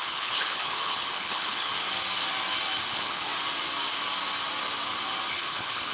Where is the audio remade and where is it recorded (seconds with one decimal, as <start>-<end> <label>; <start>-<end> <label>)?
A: 0.0-1.7 remade; 1.7-2.8 recorded; 2.8-3.3 remade; 3.3-5.3 recorded; 5.3-5.9 remade